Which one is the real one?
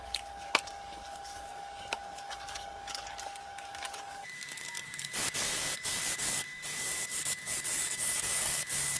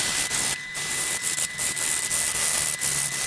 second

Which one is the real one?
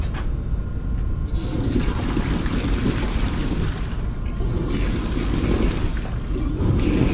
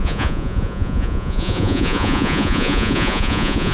first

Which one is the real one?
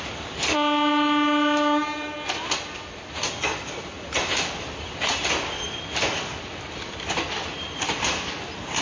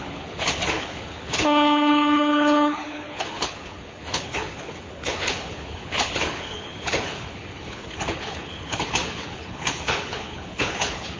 first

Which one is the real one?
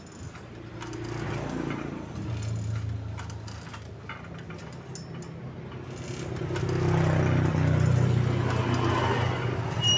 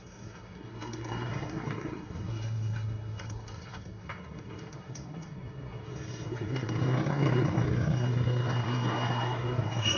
first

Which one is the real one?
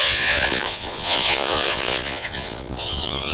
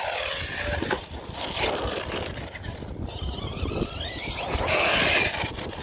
second